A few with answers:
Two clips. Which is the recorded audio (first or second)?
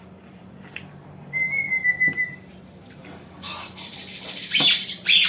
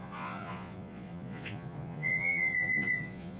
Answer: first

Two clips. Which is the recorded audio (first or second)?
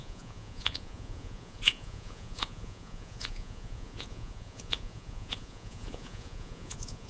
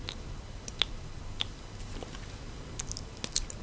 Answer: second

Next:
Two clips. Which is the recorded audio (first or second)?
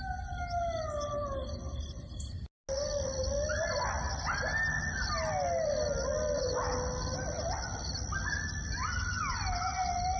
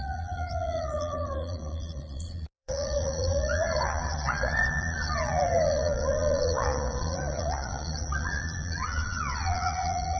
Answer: first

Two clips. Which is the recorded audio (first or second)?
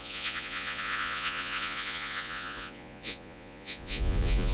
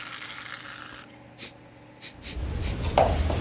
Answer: second